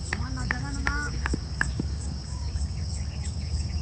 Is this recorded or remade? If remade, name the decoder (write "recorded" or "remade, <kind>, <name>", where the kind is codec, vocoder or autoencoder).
remade, codec, DAC